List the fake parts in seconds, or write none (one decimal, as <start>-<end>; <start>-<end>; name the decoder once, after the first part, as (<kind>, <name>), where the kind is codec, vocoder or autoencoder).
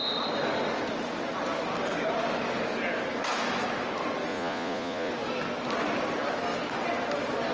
4.3-5.1 (vocoder, Vocos)